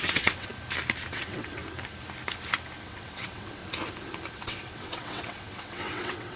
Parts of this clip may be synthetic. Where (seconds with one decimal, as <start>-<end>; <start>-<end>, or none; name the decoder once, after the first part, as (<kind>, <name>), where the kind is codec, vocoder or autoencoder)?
0.0-0.5 (vocoder, WaveNeXt); 1.1-1.6; 2.8-3.6; 4.3-6.4